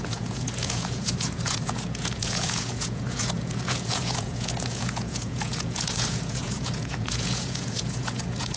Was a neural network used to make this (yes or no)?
yes